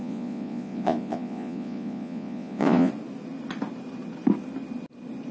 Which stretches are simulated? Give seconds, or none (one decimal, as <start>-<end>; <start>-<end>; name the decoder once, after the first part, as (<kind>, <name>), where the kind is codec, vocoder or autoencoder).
0.0-2.9 (vocoder, Vocos)